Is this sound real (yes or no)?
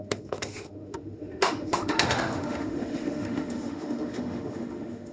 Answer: no